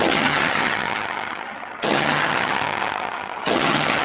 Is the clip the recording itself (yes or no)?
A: no